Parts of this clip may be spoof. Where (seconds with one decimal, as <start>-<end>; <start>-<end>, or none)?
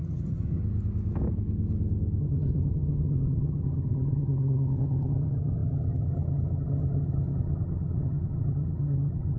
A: 0.0-0.6; 2.2-9.4